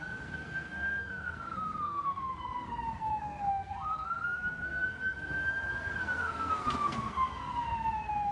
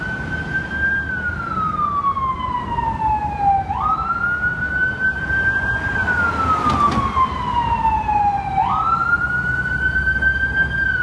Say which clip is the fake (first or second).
first